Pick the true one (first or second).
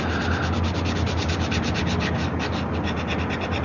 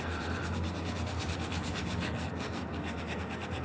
first